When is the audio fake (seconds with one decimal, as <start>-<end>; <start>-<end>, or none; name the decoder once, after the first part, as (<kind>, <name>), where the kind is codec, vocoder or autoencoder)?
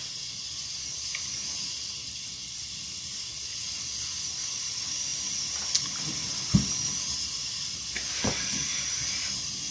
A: none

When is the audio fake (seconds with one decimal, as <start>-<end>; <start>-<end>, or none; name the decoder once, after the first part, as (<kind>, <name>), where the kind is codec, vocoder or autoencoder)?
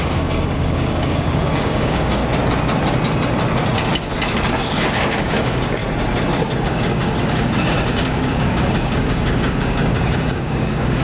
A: 0.0-2.2 (codec, DAC); 4.5-5.8; 6.6-11.0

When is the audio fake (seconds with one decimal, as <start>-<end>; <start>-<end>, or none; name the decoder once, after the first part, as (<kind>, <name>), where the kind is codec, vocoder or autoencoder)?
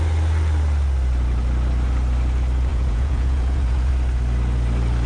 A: 2.7-3.9 (vocoder, Vocos)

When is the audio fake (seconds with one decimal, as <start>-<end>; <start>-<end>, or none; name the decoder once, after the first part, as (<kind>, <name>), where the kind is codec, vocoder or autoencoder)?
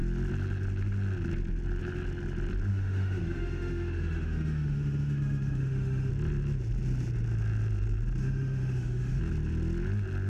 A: 2.7-6.1 (autoencoder, DAC-VAE); 8.2-9.2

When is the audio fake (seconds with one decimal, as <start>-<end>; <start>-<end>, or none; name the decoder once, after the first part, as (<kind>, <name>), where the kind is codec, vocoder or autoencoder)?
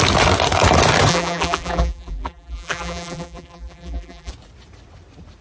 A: 1.1-4.3 (vocoder, BigVGAN v2)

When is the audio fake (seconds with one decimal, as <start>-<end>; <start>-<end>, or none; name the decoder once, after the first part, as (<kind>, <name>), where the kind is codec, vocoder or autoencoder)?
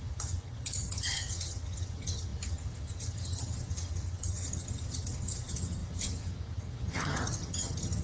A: 0.0-8.0 (vocoder, HiFi-GAN)